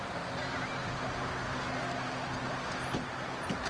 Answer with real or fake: real